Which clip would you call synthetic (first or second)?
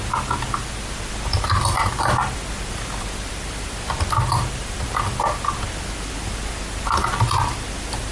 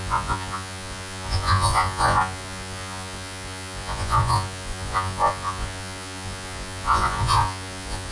second